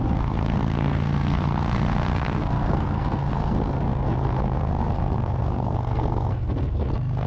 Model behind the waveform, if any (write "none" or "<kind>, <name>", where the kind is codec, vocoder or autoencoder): codec, SNAC